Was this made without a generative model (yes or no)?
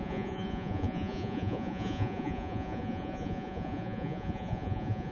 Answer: no